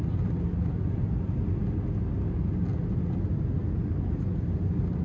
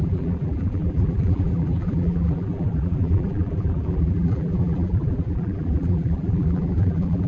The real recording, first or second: first